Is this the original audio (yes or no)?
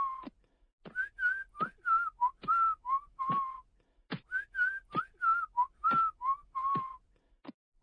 yes